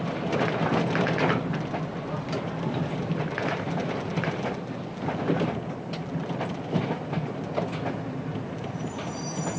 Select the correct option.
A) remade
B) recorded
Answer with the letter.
B